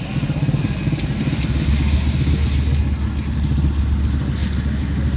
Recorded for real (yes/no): yes